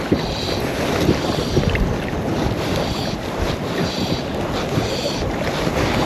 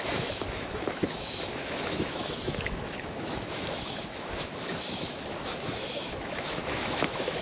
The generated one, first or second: second